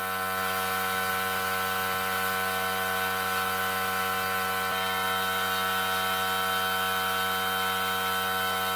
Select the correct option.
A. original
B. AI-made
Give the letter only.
A